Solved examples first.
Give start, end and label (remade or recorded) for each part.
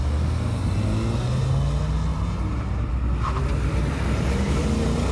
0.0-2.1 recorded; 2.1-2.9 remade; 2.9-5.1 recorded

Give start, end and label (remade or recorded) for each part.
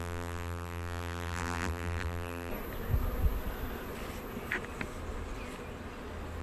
0.0-2.5 remade; 2.5-6.4 recorded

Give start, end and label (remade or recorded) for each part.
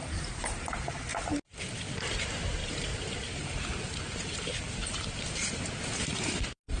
0.0-0.6 remade; 0.6-2.6 recorded; 2.6-6.8 remade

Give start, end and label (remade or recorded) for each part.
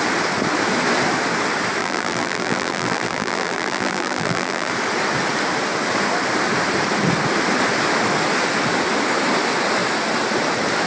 0.0-1.8 recorded; 1.8-4.7 remade; 4.7-10.9 recorded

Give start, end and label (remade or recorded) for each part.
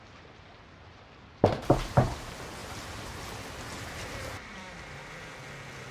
0.0-5.0 remade; 5.0-5.9 recorded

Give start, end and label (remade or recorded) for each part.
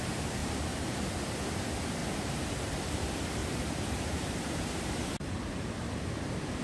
0.0-0.4 recorded; 0.4-1.0 remade; 1.0-2.0 recorded; 2.0-2.8 remade; 2.8-3.4 recorded; 3.4-4.4 remade; 4.4-6.6 recorded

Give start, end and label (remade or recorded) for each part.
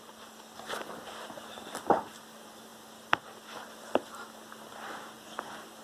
0.0-5.8 recorded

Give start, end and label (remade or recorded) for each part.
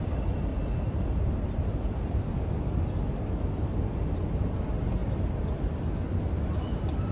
0.0-0.5 recorded; 0.5-4.5 remade; 4.5-7.1 recorded